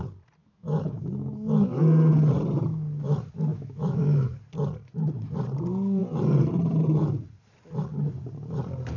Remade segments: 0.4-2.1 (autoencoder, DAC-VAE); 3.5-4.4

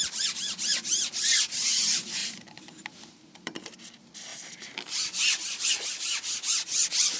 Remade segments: 2.2-3.8 (vocoder, BigVGAN v2)

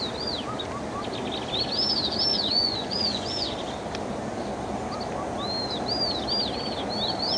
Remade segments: 2.3-3.5 (vocoder, Vocos)

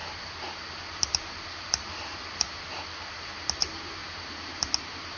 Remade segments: 4.0-4.7 (vocoder, BigVGAN v2)